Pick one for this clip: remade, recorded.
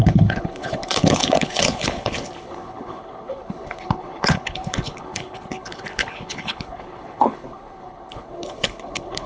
remade